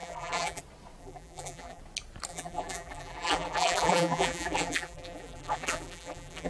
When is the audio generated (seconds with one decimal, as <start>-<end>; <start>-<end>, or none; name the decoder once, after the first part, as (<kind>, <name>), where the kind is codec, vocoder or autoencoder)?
0.0-0.6 (vocoder, BigVGAN v2); 1.0-1.8; 2.3-6.5